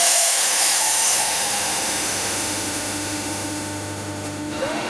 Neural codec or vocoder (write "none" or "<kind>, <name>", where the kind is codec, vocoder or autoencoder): autoencoder, DAC-VAE